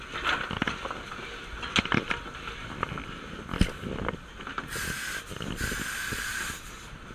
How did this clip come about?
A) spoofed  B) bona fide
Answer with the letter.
B